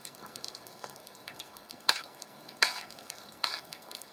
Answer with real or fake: fake